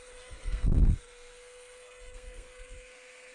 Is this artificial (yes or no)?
yes